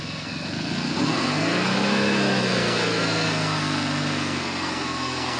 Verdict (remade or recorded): remade